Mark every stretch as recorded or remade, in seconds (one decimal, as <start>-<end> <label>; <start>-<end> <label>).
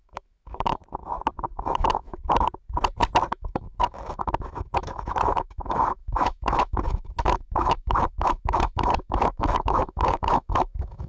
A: 0.0-0.8 remade; 0.8-1.5 recorded; 1.5-2.2 remade; 2.2-3.3 recorded; 3.3-11.1 remade